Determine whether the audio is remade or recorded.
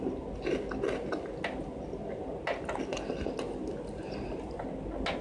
recorded